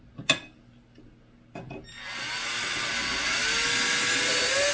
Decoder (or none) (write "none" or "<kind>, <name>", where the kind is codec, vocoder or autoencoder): none